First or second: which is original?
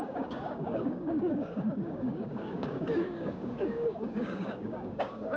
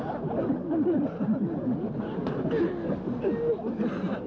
second